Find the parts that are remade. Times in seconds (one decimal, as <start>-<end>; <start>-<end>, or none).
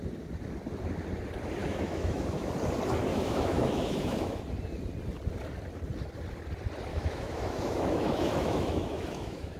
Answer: 1.6-2.5; 3.1-4.4; 6.9-9.6